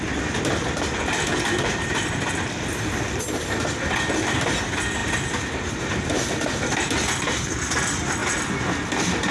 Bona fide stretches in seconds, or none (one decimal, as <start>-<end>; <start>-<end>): 0.0-9.3